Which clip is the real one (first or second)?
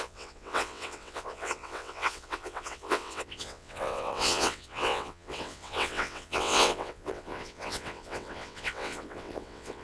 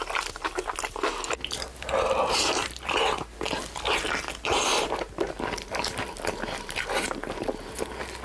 second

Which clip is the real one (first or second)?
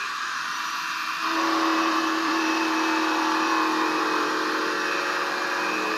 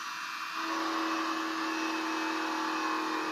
second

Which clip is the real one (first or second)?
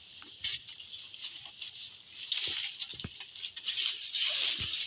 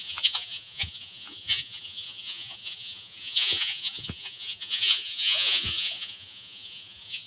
first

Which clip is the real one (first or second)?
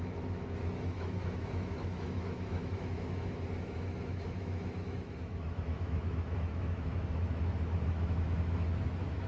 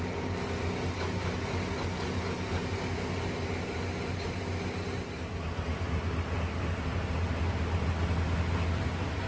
second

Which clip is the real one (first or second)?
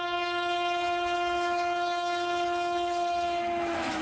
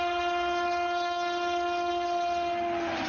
second